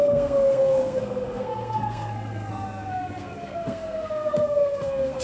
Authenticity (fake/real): fake